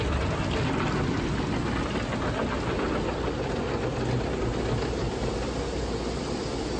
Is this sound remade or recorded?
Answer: recorded